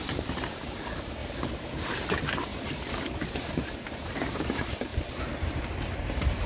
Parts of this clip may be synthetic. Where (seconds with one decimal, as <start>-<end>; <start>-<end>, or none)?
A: 0.0-1.2; 2.1-6.5